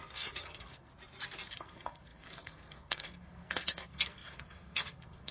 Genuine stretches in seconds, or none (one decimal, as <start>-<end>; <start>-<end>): 0.9-1.5